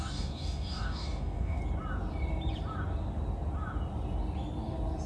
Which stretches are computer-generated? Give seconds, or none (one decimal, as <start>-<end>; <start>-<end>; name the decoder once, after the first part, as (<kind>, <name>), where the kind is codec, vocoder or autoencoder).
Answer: 0.0-1.6 (codec, DAC)